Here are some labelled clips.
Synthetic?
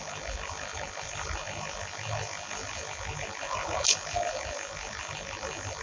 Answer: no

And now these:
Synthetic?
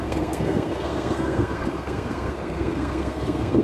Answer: yes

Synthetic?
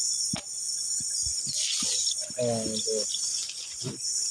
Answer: no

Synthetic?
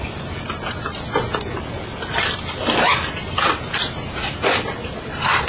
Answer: no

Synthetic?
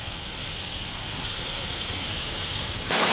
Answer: yes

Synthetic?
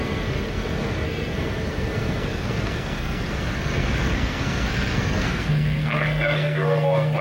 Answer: yes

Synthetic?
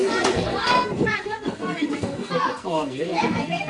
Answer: yes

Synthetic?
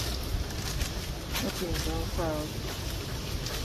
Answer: no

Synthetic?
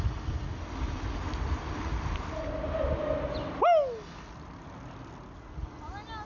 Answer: no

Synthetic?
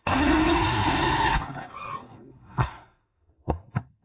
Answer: yes